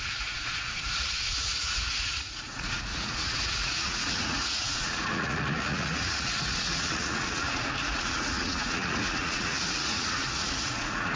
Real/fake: fake